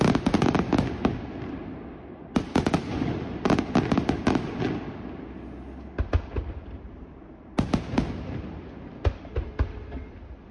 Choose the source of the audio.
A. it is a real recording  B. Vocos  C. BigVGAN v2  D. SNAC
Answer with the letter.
A